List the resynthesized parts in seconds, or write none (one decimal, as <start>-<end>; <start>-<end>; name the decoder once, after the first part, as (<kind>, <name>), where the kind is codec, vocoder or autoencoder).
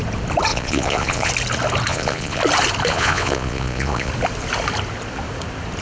0.5-1.3 (vocoder, Vocos); 1.9-2.4; 2.9-4.1